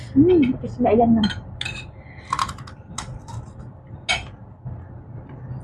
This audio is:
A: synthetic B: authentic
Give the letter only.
B